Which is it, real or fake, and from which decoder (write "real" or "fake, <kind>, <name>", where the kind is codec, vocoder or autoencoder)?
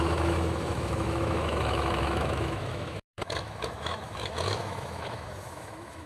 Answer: fake, autoencoder, DAC-VAE